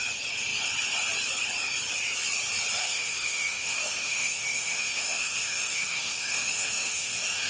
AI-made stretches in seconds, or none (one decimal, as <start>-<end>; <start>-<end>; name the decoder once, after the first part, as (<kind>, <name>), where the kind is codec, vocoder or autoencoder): 2.8-7.5 (autoencoder, DAC-VAE)

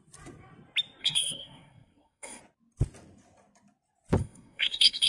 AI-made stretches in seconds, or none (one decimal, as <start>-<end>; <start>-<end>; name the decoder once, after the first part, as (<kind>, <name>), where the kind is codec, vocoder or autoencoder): 1.0-2.4 (codec, SNAC); 4.2-5.1

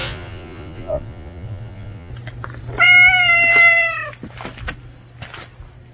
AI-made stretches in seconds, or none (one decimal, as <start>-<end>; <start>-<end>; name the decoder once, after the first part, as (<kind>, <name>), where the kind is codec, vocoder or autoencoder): 0.0-2.1 (vocoder, Vocos)

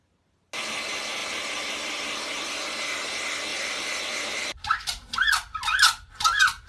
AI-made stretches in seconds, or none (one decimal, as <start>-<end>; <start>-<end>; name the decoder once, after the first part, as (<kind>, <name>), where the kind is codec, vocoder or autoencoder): 1.2-2.5 (vocoder, BigVGAN v2); 3.5-5.3